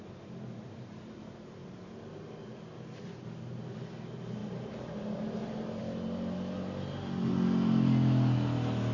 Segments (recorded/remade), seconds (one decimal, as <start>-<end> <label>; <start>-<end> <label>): 0.0-8.9 recorded